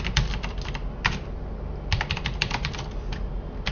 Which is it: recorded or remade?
recorded